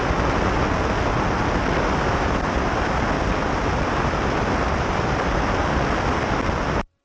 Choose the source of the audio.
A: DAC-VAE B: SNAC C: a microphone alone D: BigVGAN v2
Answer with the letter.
C